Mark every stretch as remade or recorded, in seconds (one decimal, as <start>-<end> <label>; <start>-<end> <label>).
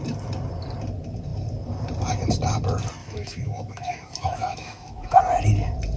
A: 0.0-3.0 recorded; 3.0-5.2 remade; 5.2-6.0 recorded